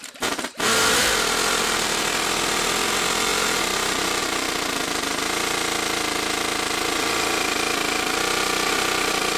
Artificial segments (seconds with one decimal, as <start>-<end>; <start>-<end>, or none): none